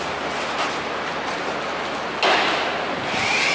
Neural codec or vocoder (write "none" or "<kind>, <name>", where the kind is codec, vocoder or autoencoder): none